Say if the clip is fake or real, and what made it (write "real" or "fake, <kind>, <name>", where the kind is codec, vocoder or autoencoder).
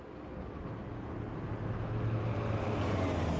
real